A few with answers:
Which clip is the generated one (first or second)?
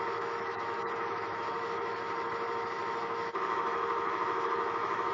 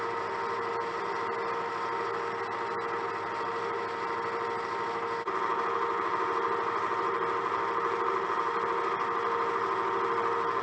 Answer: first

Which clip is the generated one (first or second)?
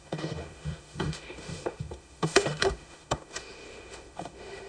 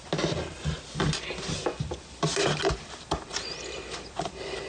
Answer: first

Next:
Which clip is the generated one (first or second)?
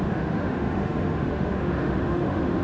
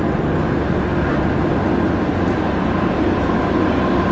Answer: first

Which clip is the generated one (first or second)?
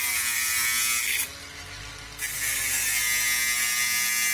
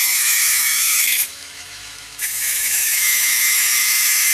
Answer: second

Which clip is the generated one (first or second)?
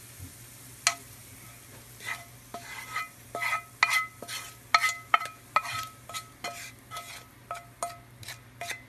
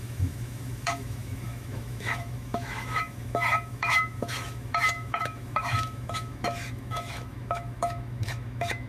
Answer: second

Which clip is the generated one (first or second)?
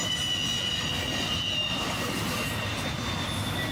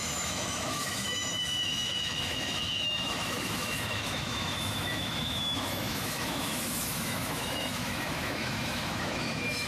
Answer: second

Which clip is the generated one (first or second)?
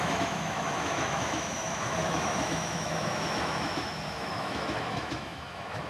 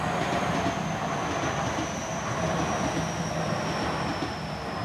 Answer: first